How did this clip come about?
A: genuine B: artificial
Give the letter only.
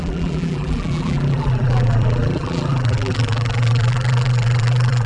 B